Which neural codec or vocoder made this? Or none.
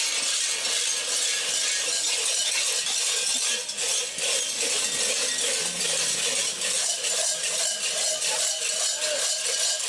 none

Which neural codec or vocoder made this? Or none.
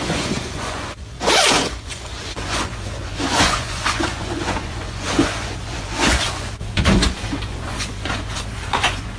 vocoder, Vocos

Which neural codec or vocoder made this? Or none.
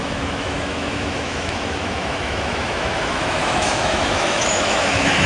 autoencoder, DAC-VAE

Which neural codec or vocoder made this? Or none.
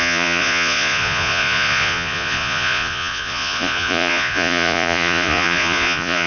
vocoder, Vocos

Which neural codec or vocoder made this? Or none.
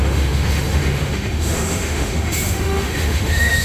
autoencoder, DAC-VAE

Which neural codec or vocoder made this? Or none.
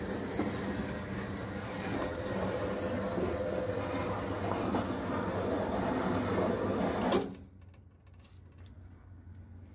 none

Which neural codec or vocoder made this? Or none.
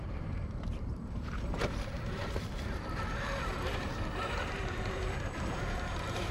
vocoder, BigVGAN v2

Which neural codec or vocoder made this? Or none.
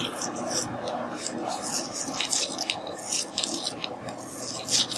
none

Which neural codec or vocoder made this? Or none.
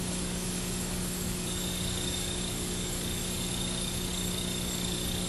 codec, DAC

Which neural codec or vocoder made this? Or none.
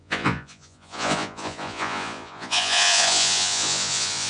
vocoder, Vocos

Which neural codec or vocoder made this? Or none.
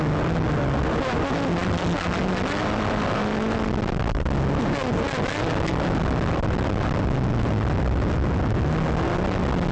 none